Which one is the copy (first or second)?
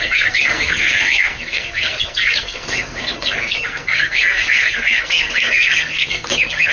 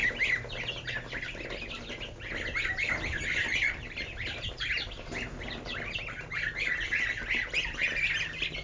first